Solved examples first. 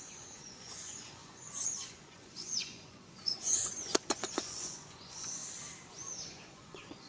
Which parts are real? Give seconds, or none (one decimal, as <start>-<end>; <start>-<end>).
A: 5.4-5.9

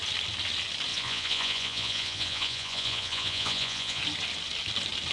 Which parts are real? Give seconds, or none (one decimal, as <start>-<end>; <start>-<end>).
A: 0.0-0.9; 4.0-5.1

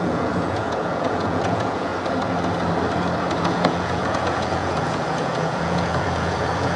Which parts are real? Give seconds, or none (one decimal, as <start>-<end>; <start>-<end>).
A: 1.9-3.4

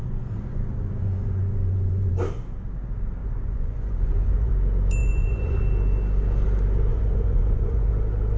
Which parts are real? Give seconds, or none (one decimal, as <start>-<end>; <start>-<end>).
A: 2.1-3.2; 4.5-5.0; 5.6-6.9; 7.9-8.4